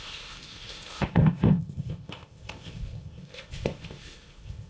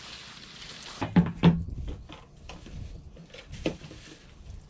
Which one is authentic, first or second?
second